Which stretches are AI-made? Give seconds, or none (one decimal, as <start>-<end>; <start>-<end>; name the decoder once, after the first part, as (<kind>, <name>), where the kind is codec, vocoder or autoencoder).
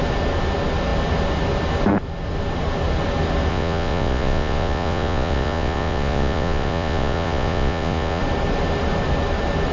3.5-8.2 (vocoder, Vocos)